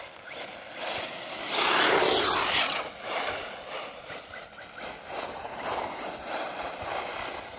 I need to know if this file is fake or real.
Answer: real